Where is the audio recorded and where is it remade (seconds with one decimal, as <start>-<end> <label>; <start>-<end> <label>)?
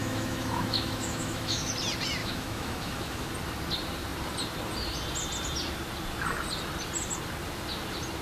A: 0.0-1.7 remade; 1.7-2.2 recorded; 2.2-3.3 remade; 3.3-8.2 recorded